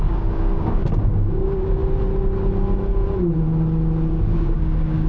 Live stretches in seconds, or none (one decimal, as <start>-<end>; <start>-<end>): 1.8-4.1